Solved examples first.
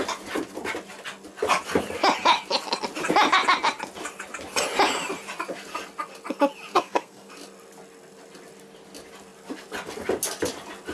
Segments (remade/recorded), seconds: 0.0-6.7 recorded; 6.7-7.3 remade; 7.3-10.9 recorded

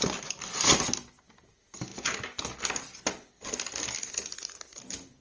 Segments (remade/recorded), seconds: 0.0-5.2 recorded

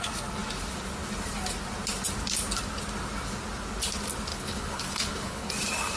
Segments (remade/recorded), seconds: 0.0-4.3 recorded; 4.3-5.5 remade; 5.5-6.0 recorded